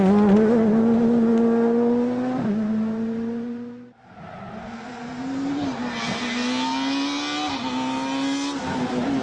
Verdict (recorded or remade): recorded